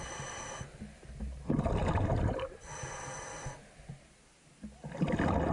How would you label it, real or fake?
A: real